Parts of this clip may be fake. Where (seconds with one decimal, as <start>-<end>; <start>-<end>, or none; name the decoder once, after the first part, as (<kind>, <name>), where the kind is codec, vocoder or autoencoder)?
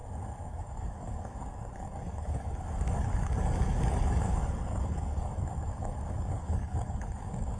0.5-7.6 (codec, DAC)